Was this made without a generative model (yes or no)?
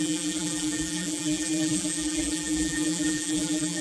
no